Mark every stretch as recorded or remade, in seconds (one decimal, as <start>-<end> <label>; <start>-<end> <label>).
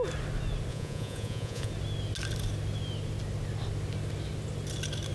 0.0-0.7 recorded; 0.7-1.7 remade; 1.7-5.1 recorded